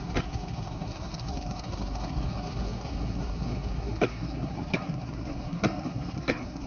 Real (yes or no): no